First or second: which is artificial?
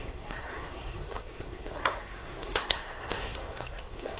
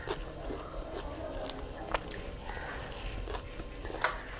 first